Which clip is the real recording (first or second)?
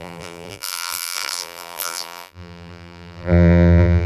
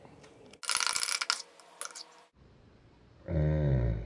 second